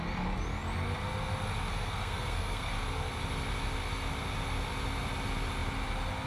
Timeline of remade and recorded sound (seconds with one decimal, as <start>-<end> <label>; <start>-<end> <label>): 0.0-1.7 recorded; 1.7-2.7 remade; 2.7-6.3 recorded